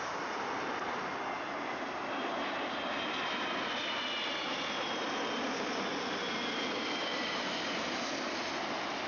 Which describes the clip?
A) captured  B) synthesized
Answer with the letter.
A